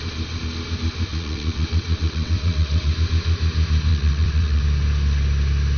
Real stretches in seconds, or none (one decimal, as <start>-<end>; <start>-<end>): 0.0-1.1; 2.9-3.9; 4.6-5.8